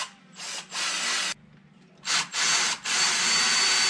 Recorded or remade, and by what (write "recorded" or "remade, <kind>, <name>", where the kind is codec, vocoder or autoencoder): recorded